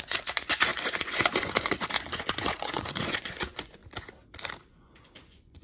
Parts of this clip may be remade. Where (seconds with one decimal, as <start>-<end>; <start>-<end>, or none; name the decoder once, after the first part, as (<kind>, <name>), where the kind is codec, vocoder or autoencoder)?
0.0-3.8 (vocoder, Vocos); 4.7-5.6